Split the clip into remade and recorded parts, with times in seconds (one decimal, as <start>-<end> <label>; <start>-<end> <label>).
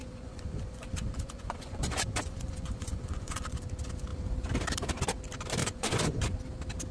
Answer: 0.0-3.6 remade; 3.6-5.6 recorded; 5.6-6.2 remade; 6.2-6.9 recorded